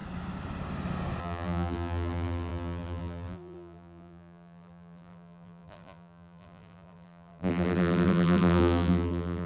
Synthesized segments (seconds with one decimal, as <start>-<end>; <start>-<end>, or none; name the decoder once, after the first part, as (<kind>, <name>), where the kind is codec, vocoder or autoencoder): 1.2-9.5 (vocoder, BigVGAN v2)